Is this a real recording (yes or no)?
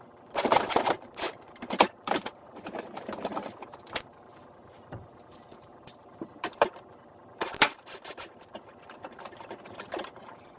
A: no